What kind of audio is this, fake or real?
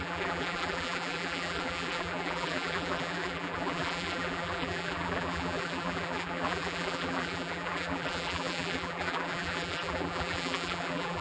fake